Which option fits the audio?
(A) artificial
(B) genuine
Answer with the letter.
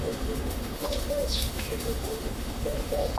A